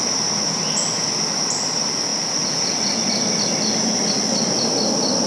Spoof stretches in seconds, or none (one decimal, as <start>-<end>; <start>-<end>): none